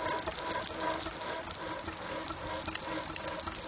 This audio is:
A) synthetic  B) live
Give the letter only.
B